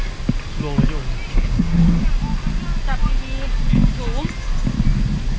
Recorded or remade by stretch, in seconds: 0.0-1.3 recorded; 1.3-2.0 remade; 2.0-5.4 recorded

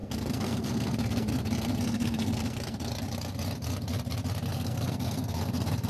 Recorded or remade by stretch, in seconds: 0.0-2.9 remade; 2.9-4.5 recorded; 4.5-5.9 remade

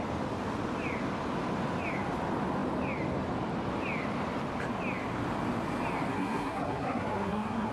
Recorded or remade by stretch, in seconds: 0.0-6.1 recorded; 6.1-7.7 remade

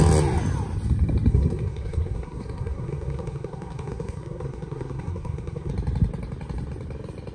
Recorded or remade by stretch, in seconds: 0.0-1.3 recorded; 1.3-5.7 remade; 5.7-7.3 recorded